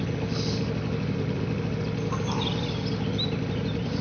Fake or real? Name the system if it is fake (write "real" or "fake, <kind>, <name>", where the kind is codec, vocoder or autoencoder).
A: real